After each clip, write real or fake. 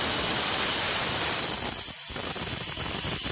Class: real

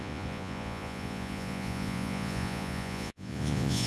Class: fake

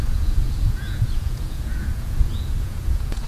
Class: fake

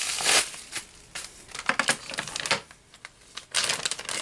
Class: real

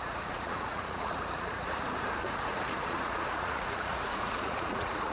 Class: fake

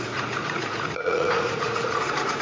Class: fake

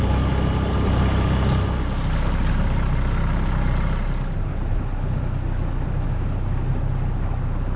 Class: real